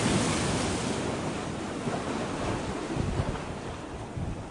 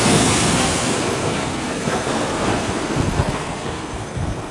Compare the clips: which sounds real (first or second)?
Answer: first